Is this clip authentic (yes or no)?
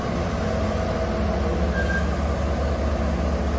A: yes